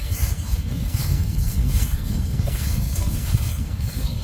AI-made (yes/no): yes